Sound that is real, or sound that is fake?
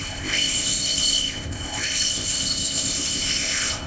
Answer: fake